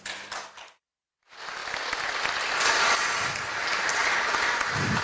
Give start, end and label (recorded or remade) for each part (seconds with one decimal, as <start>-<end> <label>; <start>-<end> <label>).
0.0-5.0 recorded